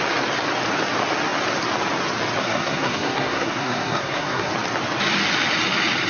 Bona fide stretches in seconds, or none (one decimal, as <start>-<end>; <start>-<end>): 0.0-2.4; 4.5-6.1